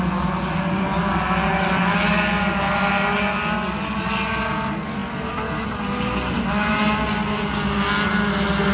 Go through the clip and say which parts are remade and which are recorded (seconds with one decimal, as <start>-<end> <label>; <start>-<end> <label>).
0.0-8.7 recorded